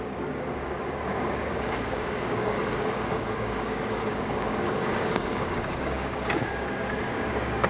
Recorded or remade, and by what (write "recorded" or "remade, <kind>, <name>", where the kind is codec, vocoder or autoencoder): remade, codec, DAC